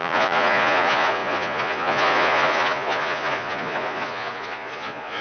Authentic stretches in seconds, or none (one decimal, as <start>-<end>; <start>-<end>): none